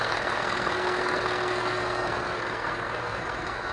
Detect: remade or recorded remade